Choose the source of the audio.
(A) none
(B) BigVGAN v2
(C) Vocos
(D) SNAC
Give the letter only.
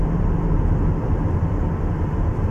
A